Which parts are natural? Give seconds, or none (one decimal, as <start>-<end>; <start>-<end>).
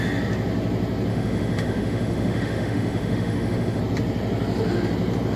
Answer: 0.0-1.1; 3.8-5.4